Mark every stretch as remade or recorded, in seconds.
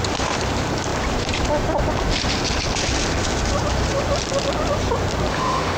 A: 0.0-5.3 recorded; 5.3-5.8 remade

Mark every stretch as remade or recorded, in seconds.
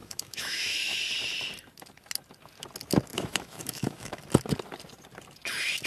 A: 0.0-1.0 remade; 1.0-3.1 recorded; 3.1-4.2 remade; 4.2-5.9 recorded